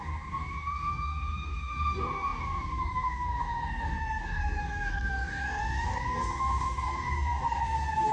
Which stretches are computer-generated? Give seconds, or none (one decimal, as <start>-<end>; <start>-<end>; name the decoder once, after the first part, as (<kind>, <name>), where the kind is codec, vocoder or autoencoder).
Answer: 0.0-8.1 (codec, DAC)